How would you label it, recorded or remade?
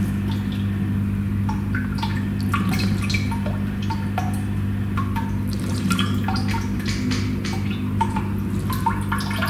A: recorded